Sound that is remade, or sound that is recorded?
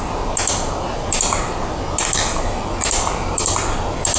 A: recorded